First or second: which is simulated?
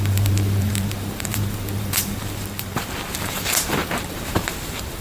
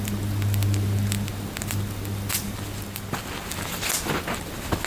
first